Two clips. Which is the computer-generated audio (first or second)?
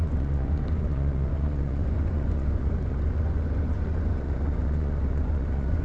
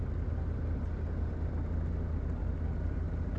first